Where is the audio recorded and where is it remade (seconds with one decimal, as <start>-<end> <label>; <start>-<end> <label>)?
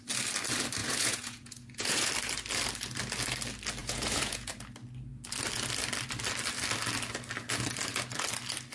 0.0-0.8 recorded; 0.8-2.1 remade; 2.1-3.8 recorded; 3.8-4.5 remade; 4.5-8.7 recorded